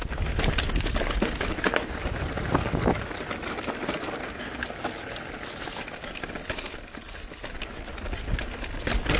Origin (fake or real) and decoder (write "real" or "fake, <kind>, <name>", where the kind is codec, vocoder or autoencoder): real